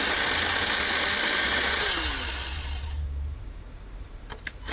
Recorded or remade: recorded